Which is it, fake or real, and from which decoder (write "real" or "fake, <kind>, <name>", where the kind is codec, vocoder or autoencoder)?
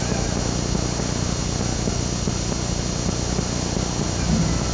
real